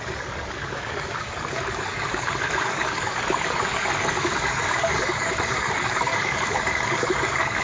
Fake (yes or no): yes